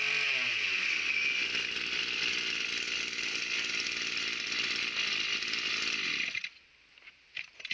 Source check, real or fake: real